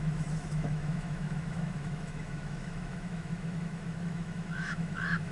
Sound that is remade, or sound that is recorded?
remade